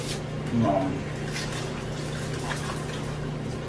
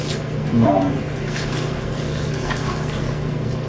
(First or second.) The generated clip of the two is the second